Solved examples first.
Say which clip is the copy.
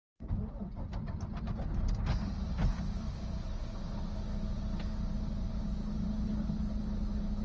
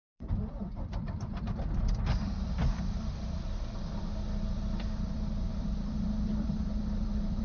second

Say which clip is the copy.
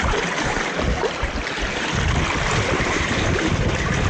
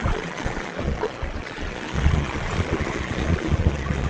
second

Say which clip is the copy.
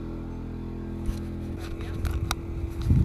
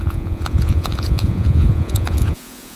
second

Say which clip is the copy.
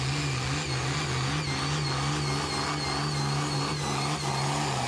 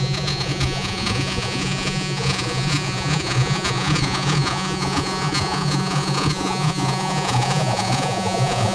second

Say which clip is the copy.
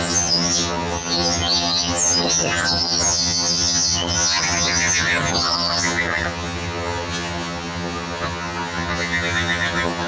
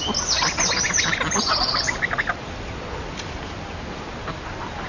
first